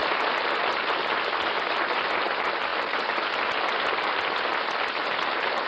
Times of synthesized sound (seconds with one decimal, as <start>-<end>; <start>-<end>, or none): none